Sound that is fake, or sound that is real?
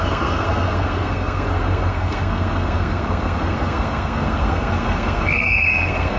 fake